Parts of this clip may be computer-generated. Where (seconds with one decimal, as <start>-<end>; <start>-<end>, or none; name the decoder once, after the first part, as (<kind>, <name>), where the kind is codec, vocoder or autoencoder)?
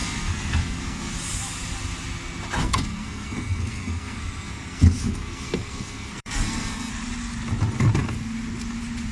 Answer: 0.0-1.1 (codec, SNAC); 2.6-6.9